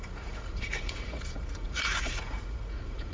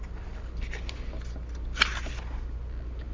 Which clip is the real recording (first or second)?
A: second